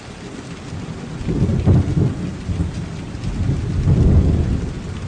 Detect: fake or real real